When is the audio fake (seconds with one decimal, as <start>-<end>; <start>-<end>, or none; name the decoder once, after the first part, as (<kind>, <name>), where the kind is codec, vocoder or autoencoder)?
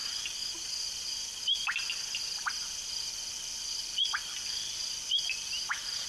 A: none